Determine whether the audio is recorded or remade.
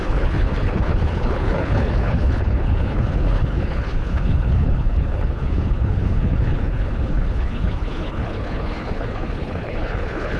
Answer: remade